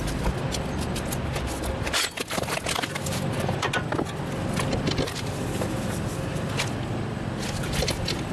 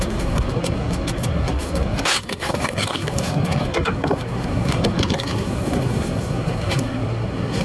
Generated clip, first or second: second